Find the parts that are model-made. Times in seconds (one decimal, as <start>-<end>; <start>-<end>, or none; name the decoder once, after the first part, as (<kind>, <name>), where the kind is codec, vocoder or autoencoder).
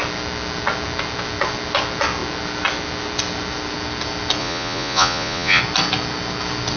4.4-5.6 (vocoder, Vocos)